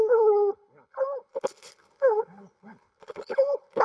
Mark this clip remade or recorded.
remade